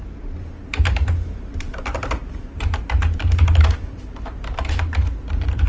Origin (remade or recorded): remade